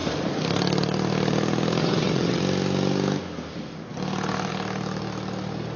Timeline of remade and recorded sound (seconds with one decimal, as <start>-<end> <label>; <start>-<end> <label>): 0.0-1.8 recorded; 1.8-2.4 remade; 2.4-5.8 recorded